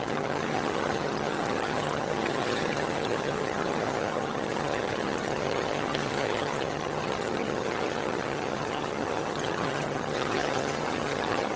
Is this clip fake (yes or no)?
yes